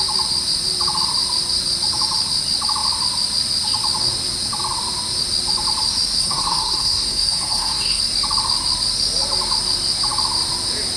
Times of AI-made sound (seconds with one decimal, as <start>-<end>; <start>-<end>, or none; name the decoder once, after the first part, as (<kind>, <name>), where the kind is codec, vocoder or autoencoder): 6.2-8.0 (codec, SNAC)